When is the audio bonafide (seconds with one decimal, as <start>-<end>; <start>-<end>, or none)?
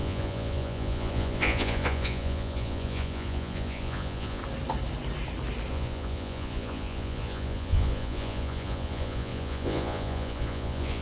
4.4-5.7